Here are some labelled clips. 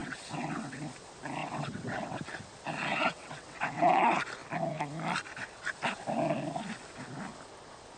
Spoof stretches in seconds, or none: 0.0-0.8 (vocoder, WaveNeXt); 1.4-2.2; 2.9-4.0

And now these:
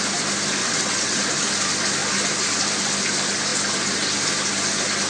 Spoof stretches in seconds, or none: 0.6-1.2 (vocoder, WaveNeXt)

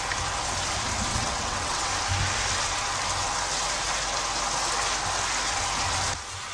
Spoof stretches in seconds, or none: 1.1-1.9 (vocoder, WaveNeXt)

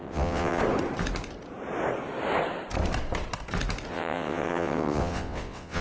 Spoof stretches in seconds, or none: 0.0-0.6 (vocoder, WaveNeXt); 3.9-5.8

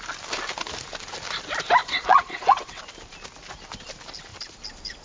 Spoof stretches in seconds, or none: 1.8-2.8 (vocoder, WaveNeXt)

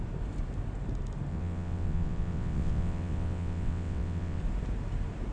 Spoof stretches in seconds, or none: 1.3-4.4 (vocoder, WaveNeXt)

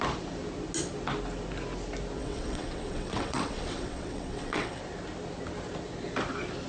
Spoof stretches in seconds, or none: 2.2-4.8 (vocoder, WaveNeXt)

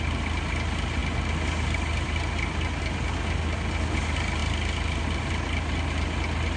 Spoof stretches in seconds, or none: none